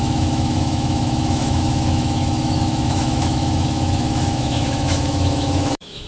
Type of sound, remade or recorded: remade